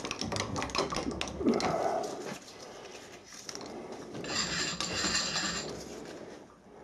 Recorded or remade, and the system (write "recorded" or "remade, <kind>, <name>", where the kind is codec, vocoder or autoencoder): recorded